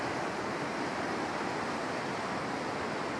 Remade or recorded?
recorded